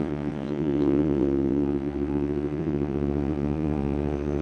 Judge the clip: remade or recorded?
remade